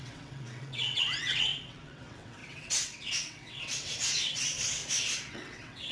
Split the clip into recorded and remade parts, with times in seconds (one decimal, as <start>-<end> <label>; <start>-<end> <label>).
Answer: 0.0-4.8 remade; 4.8-5.3 recorded; 5.3-5.9 remade